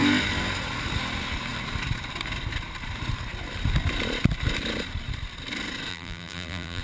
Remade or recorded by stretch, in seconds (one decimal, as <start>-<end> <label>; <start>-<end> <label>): 0.0-5.9 recorded; 5.9-6.8 remade